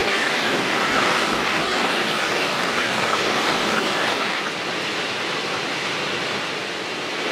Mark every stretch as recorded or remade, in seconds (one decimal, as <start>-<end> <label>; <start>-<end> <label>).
0.0-4.4 remade; 4.4-7.3 recorded